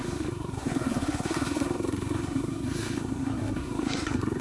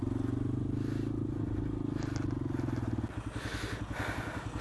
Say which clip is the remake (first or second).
first